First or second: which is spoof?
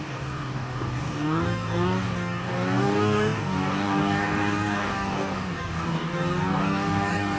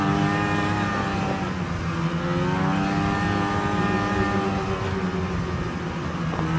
first